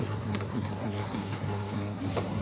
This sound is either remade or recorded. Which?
remade